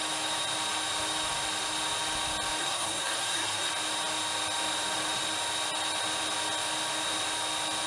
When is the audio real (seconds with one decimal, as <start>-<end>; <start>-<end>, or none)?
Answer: 0.0-2.6; 3.7-7.9